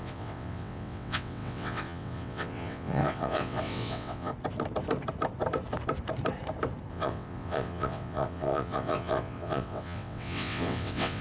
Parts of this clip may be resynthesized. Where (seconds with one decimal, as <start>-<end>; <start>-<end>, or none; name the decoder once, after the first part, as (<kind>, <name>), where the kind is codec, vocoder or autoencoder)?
0.0-4.3 (vocoder, WaveNeXt); 6.9-11.2